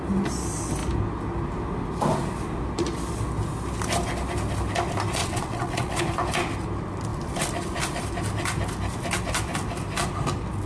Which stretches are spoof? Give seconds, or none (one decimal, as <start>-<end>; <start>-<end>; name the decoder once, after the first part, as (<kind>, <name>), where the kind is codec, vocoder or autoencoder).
5.2-6.0 (vocoder, WaveNeXt)